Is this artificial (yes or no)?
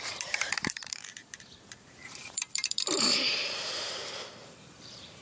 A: yes